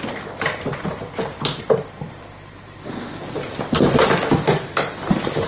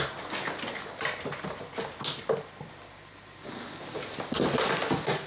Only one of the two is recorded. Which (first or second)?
second